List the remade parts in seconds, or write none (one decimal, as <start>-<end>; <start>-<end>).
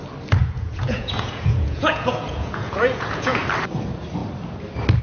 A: 0.4-3.4